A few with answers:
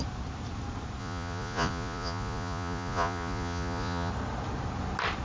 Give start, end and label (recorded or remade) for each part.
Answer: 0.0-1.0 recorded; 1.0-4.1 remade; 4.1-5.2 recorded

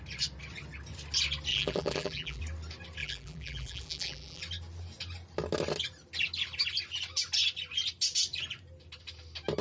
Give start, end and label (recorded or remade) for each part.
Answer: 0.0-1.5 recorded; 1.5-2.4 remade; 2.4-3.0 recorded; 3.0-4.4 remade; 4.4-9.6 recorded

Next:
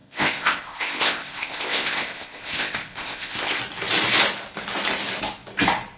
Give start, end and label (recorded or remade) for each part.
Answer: 0.0-3.6 remade; 3.6-6.0 recorded

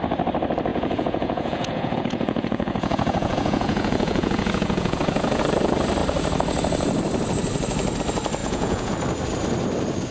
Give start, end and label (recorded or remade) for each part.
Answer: 0.0-0.7 recorded; 0.7-5.4 remade; 5.4-8.4 recorded; 8.4-8.9 remade; 8.9-10.1 recorded

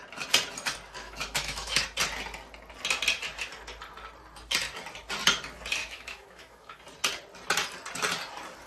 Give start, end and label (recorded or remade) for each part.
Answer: 0.0-1.0 recorded; 1.0-1.8 remade; 1.8-5.8 recorded; 5.8-6.8 remade; 6.8-8.7 recorded